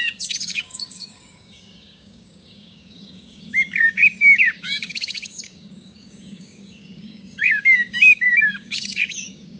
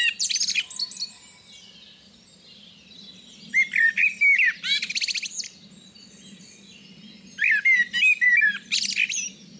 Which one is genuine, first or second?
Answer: second